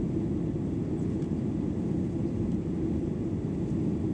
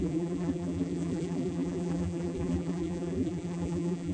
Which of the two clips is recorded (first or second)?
first